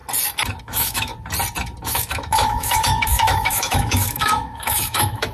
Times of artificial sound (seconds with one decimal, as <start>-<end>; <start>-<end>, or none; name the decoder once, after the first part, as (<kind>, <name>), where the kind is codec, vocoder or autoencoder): 0.6-1.1 (autoencoder, DAC-VAE); 1.8-5.3